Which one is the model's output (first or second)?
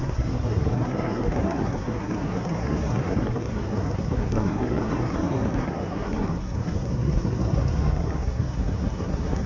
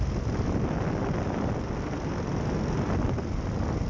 first